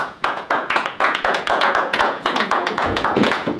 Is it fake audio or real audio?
fake